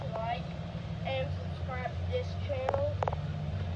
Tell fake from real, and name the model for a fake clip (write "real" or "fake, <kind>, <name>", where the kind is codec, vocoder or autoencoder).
real